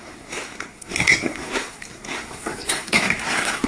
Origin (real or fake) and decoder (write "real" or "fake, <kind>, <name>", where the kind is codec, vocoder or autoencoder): fake, codec, SNAC